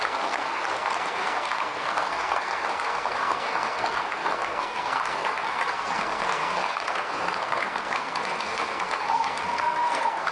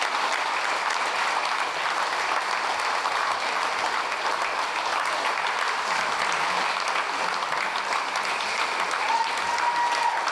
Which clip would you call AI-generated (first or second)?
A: first